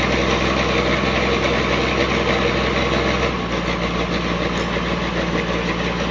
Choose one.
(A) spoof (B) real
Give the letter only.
B